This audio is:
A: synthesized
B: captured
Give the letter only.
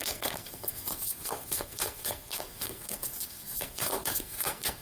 A